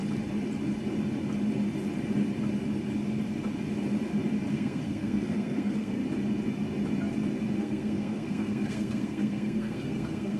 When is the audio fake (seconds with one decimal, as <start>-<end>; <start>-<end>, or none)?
4.5-6.0; 7.6-10.4